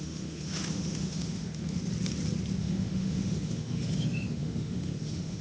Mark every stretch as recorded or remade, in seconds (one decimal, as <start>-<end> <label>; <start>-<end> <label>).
0.0-1.8 remade; 1.8-2.6 recorded; 2.6-5.4 remade

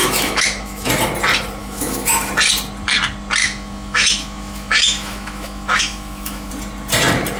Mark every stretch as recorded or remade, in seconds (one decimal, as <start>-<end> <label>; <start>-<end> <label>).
0.0-0.9 remade; 0.9-1.6 recorded; 1.6-2.3 remade; 2.3-3.4 recorded; 3.4-6.5 remade; 6.5-7.4 recorded